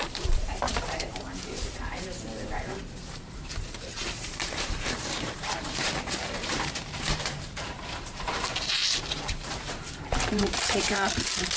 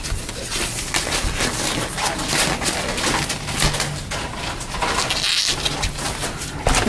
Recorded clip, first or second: second